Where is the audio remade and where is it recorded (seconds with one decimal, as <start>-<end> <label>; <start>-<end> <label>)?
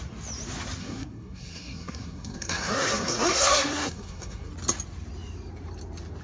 0.0-0.8 recorded; 0.8-4.5 remade; 4.5-6.2 recorded